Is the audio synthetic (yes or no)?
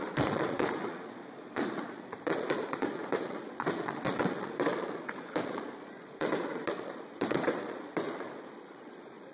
yes